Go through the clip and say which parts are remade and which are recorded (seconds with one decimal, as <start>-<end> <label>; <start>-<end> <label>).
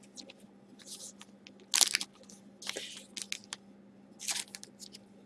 0.0-5.3 recorded